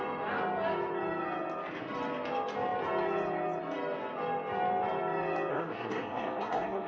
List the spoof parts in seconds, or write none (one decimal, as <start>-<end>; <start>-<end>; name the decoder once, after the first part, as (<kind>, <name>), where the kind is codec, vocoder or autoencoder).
5.5-6.9 (codec, SNAC)